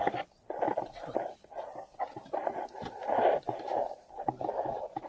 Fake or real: real